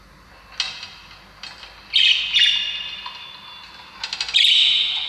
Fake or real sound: real